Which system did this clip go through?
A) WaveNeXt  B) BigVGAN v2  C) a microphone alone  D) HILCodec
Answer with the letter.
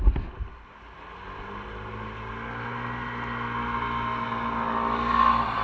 C